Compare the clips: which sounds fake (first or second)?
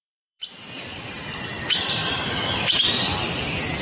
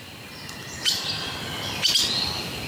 first